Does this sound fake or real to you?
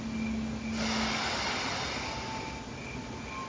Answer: real